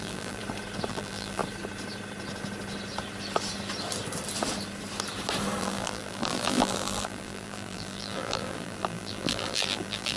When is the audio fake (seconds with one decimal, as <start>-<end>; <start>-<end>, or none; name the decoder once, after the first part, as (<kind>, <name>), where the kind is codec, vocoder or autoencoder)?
0.0-0.4 (vocoder, BigVGAN v2); 0.9-1.4; 5.6-10.2